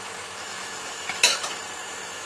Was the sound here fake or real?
fake